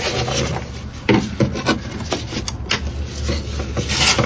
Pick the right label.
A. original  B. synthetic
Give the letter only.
A